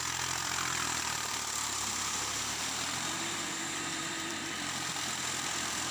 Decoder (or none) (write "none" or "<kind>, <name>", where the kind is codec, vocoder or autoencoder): vocoder, BigVGAN v2